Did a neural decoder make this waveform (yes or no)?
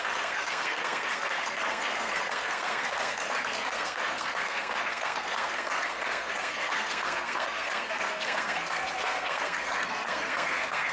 yes